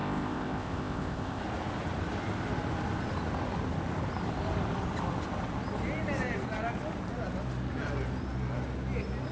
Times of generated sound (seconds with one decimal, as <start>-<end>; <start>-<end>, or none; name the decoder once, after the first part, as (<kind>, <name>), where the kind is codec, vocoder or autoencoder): 0.0-1.4 (codec, ZipCodec)